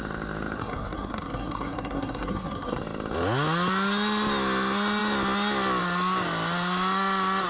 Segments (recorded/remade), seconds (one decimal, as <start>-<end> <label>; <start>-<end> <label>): 0.0-0.6 recorded; 0.6-2.8 remade; 2.8-7.5 recorded